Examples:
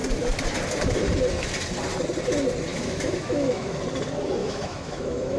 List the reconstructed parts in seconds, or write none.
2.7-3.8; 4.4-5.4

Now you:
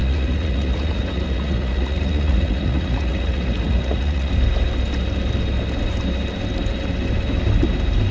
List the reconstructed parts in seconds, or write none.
0.0-4.3

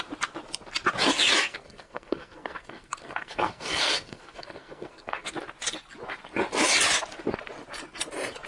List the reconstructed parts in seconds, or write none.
1.4-5.3

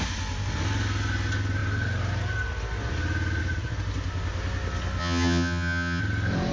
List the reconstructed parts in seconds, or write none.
5.0-6.0

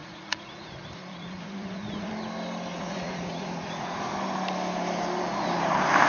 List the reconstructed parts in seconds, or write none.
0.0-2.1; 2.7-4.0

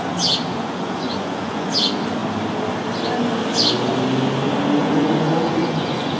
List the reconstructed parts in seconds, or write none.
0.5-1.7; 4.8-6.2